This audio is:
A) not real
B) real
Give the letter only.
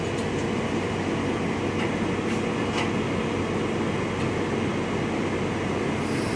B